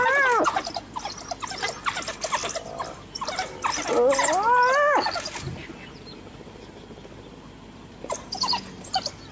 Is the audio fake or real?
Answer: real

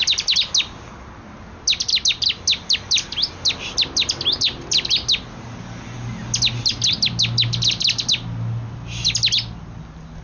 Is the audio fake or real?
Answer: real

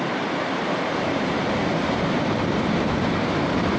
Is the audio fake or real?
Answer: fake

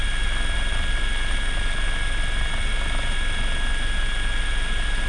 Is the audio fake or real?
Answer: real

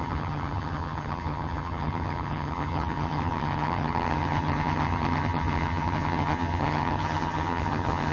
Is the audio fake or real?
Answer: fake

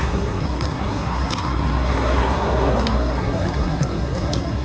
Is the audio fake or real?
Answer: fake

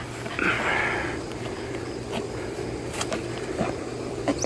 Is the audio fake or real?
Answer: real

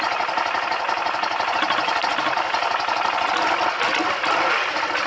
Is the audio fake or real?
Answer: real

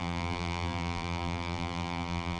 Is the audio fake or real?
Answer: fake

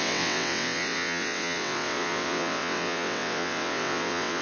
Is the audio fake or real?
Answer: fake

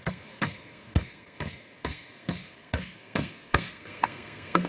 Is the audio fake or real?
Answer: fake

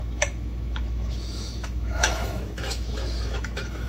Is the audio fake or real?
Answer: fake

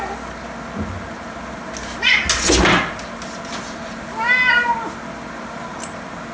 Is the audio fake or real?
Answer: real